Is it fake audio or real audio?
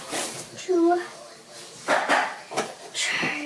real